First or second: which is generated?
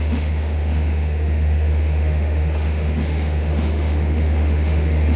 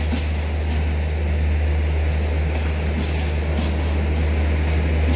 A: first